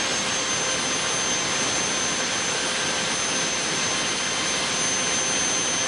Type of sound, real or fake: real